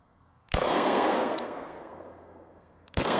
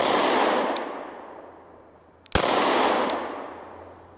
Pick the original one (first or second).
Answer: second